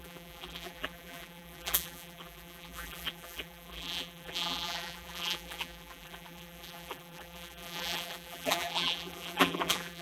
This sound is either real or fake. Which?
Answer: fake